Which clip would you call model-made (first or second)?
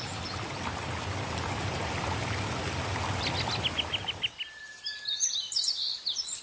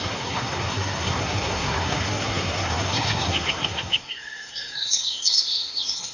second